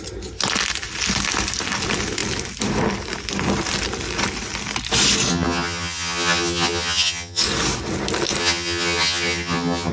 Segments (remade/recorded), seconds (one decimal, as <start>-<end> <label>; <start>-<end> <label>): 0.0-5.3 recorded; 5.3-7.4 remade; 7.4-8.4 recorded; 8.4-9.9 remade